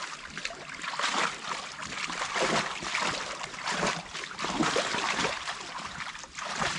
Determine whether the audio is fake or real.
real